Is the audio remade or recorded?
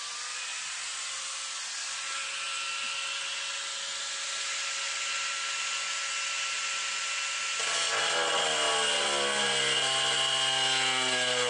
recorded